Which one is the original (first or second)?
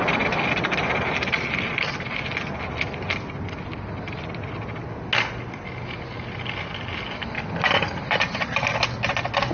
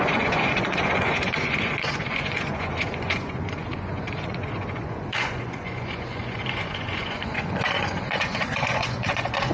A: first